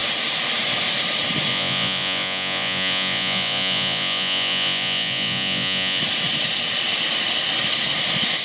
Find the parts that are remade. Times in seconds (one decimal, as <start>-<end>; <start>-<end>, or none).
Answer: 1.5-6.0